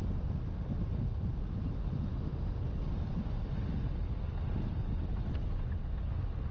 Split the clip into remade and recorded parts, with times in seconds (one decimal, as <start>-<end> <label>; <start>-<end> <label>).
0.0-2.1 recorded; 2.1-2.6 remade; 2.6-6.5 recorded

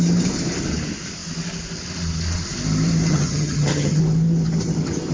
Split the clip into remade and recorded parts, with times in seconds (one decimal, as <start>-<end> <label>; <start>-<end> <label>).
0.0-3.1 recorded; 3.1-4.0 remade; 4.0-5.1 recorded

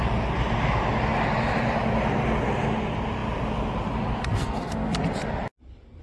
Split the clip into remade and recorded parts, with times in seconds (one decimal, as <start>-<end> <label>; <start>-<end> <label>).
0.0-4.2 recorded; 4.2-5.0 remade; 5.0-6.0 recorded

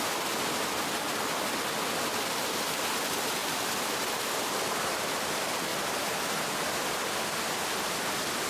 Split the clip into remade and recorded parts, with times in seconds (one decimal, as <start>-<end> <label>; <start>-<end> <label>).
0.0-3.4 recorded; 3.4-4.7 remade; 4.7-5.7 recorded; 5.7-7.0 remade; 7.0-8.5 recorded

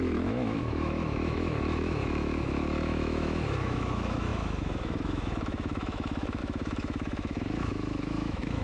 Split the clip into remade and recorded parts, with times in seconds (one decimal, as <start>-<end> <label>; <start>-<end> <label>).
0.0-8.6 remade

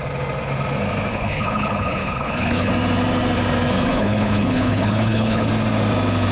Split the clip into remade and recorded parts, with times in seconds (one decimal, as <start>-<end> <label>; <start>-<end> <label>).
0.0-1.1 recorded; 1.1-2.7 remade; 2.7-3.9 recorded; 3.9-5.5 remade; 5.5-6.3 recorded

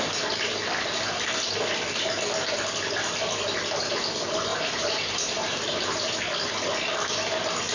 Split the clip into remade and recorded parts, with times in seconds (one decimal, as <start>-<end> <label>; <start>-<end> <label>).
0.0-4.5 recorded; 4.5-6.2 remade; 6.2-7.7 recorded